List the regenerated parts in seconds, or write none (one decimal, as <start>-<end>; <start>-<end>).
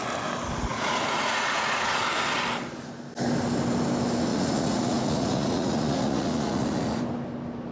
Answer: 0.7-2.0; 4.3-7.0